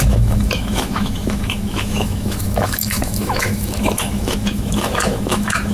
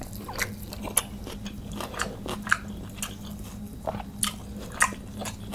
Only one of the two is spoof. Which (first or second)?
first